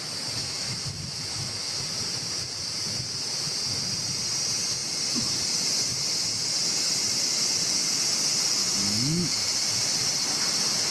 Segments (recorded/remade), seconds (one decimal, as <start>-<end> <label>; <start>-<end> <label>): 0.0-0.4 recorded; 0.4-1.8 remade; 1.8-8.6 recorded; 8.6-9.4 remade; 9.4-10.9 recorded

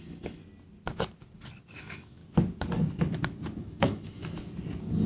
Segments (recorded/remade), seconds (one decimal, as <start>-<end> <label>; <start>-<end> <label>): 0.0-0.4 remade; 0.4-1.8 recorded; 1.8-2.2 remade; 2.2-3.6 recorded; 3.6-4.2 remade; 4.2-5.1 recorded

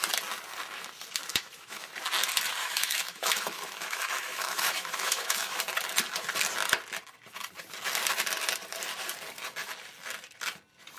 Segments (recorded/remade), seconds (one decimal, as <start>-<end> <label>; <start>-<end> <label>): 0.0-1.3 recorded; 1.3-1.9 remade; 1.9-2.6 recorded; 2.6-5.6 remade; 5.6-11.0 recorded

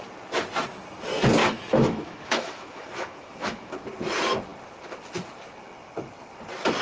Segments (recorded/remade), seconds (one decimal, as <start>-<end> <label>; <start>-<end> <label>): 0.0-1.4 recorded; 1.4-3.7 remade; 3.7-6.8 recorded

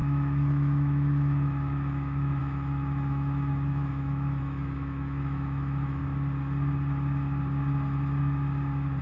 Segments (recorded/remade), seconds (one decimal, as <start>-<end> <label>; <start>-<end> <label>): 0.0-6.0 remade; 6.0-9.0 recorded

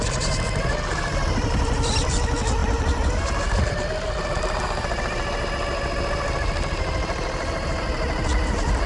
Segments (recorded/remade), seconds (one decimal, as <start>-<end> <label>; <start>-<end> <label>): 0.0-8.9 recorded

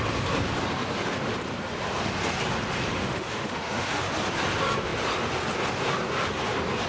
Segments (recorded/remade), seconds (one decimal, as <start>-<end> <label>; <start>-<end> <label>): 0.0-3.0 recorded; 3.0-4.0 remade; 4.0-6.9 recorded

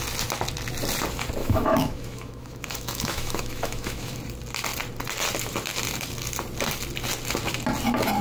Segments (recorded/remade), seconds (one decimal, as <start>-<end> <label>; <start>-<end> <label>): 0.0-1.4 recorded; 1.4-4.2 remade; 4.2-8.2 recorded